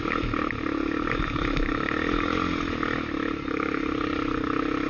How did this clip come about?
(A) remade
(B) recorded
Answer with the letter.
B